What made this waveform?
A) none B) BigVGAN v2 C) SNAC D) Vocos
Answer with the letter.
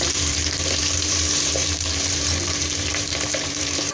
B